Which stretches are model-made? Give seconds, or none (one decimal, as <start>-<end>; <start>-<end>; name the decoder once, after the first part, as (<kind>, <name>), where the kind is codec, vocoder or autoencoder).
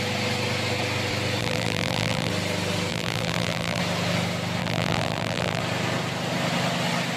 1.4-2.3 (vocoder, BigVGAN v2); 2.9-3.8; 4.6-5.6